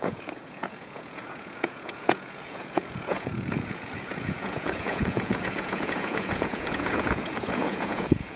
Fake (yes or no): yes